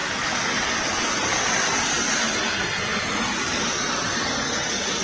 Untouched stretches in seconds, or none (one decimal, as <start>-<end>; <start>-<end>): 0.0-5.0